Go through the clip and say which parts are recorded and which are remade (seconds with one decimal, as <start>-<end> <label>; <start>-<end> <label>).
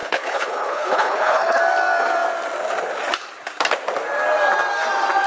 0.0-1.6 remade; 1.6-5.3 recorded